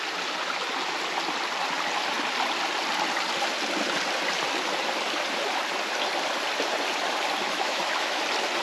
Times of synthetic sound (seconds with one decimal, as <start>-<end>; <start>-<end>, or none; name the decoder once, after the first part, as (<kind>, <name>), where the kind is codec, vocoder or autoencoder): 7.4-8.2 (autoencoder, DAC-VAE)